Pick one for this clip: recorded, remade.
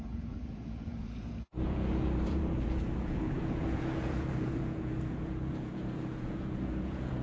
remade